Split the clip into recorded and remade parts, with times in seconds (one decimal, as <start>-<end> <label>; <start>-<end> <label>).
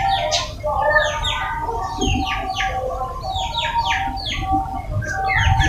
0.0-5.7 recorded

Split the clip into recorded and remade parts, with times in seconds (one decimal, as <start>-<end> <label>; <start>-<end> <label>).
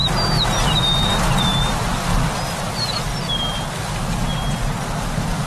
0.0-5.5 recorded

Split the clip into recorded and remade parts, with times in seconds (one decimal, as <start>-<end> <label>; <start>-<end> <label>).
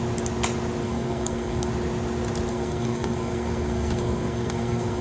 0.0-0.8 recorded; 0.8-1.7 remade; 1.7-2.5 recorded; 2.5-5.0 remade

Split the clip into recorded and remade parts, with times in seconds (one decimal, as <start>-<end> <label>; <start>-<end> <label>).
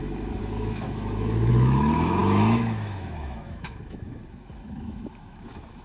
0.0-5.8 remade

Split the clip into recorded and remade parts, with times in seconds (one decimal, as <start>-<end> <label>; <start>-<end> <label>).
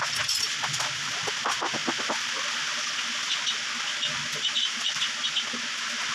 0.0-6.1 recorded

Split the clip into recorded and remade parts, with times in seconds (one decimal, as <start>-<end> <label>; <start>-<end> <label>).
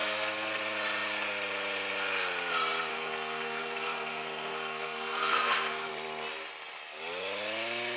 0.0-0.6 remade; 0.6-2.9 recorded; 2.9-5.9 remade; 5.9-8.0 recorded